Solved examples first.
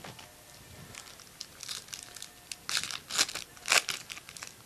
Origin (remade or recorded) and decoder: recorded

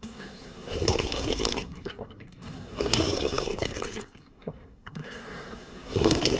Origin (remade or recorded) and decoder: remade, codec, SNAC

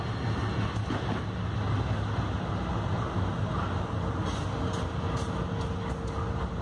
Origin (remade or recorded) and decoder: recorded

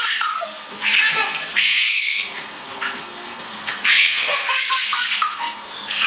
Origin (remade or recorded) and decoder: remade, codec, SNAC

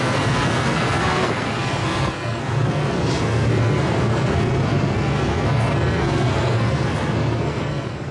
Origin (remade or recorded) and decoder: remade, codec, SNAC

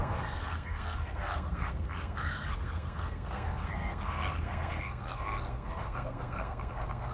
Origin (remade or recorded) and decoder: remade, codec, SNAC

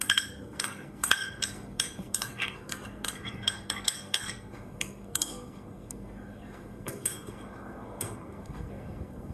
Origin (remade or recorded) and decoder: remade, codec, SNAC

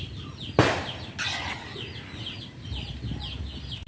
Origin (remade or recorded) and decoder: recorded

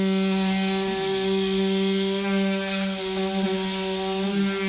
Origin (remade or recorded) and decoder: recorded